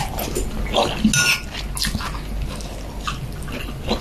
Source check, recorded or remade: recorded